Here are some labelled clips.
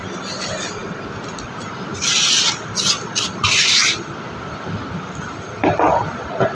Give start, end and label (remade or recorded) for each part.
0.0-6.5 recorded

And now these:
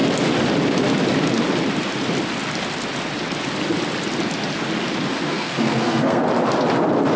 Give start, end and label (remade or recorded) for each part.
0.0-5.1 recorded; 5.1-6.2 remade; 6.2-7.2 recorded